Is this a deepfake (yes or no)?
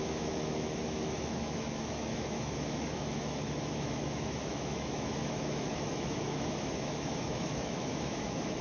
yes